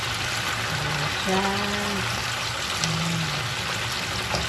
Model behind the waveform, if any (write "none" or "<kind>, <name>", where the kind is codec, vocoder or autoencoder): none